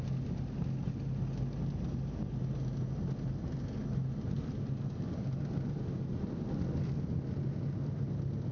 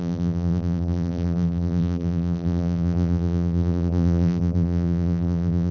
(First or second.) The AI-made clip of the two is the second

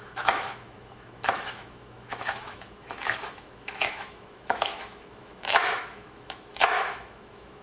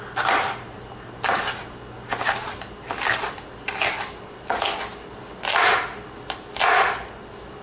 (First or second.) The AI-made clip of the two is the first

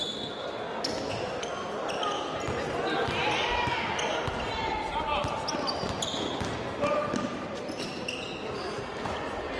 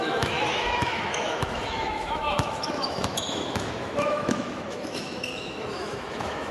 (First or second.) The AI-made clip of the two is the second